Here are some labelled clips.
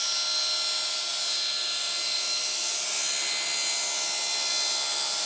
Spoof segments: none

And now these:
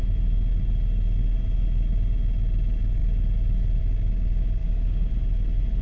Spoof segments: 4.6-5.1 (codec, DAC)